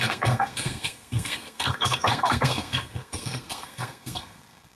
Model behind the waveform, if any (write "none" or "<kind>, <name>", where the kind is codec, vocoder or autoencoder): codec, SNAC